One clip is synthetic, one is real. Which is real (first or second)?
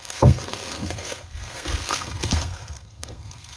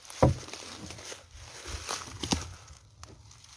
second